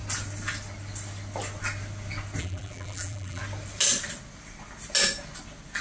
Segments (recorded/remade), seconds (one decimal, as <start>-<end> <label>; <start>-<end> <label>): 0.0-2.4 recorded; 2.4-3.4 remade; 3.4-5.8 recorded